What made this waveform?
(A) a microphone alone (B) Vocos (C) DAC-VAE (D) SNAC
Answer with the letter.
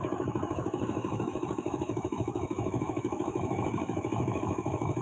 C